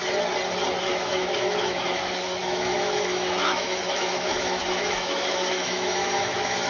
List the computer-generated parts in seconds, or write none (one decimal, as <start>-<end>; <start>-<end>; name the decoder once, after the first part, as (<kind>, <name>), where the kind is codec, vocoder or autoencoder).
0.9-2.0 (autoencoder, DAC-VAE); 2.4-6.7